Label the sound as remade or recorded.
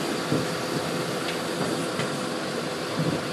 recorded